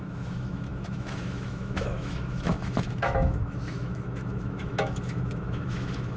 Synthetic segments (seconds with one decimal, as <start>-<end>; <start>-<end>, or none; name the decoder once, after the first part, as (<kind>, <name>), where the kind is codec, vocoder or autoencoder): 0.0-6.2 (autoencoder, DAC-VAE)